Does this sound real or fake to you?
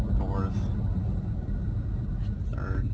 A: real